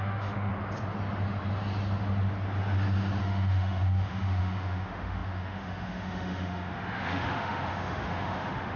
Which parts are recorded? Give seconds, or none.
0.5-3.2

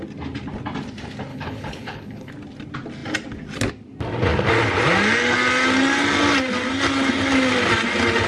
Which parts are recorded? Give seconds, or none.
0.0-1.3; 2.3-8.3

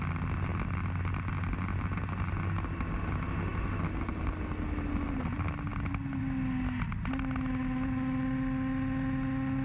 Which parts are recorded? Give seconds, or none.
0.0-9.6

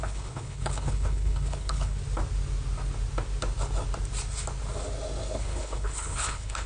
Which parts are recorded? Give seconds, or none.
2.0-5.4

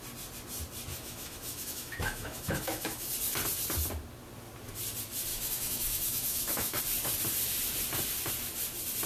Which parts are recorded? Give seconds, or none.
0.0-0.9; 3.1-5.3; 6.8-9.1

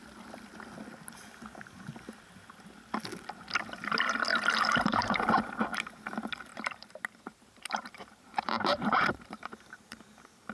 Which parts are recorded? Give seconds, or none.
0.0-4.3; 5.2-6.5